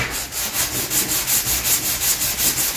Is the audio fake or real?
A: real